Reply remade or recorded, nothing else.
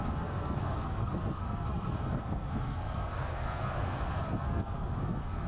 remade